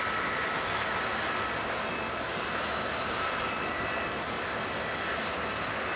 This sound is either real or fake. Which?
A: real